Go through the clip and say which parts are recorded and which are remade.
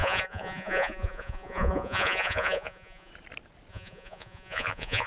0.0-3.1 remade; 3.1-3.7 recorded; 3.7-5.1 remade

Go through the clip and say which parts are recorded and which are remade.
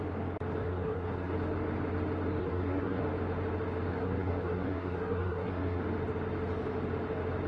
0.0-0.6 recorded; 0.6-1.3 remade; 1.3-2.4 recorded; 2.4-3.0 remade; 3.0-3.9 recorded; 3.9-5.8 remade; 5.8-7.5 recorded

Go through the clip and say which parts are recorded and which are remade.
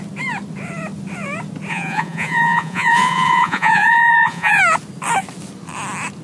0.0-1.7 recorded; 1.7-4.6 remade; 4.6-6.2 recorded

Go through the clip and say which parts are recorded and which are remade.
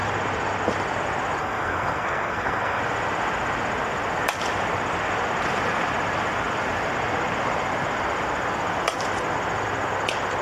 0.0-1.4 recorded; 1.4-2.8 remade; 2.8-10.4 recorded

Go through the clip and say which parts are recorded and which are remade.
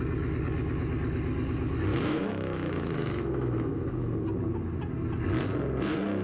0.0-1.9 recorded; 1.9-4.3 remade; 4.3-6.2 recorded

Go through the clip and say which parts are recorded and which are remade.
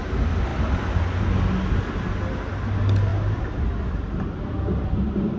0.0-3.1 recorded; 3.1-4.1 remade; 4.1-5.4 recorded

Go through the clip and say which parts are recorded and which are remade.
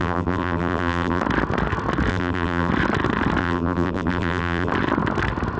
0.0-1.2 remade; 1.2-2.1 recorded; 2.1-2.7 remade; 2.7-3.4 recorded; 3.4-4.7 remade; 4.7-5.6 recorded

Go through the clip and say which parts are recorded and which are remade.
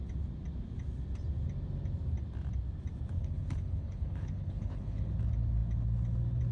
0.0-3.2 recorded; 3.2-5.1 remade; 5.1-6.5 recorded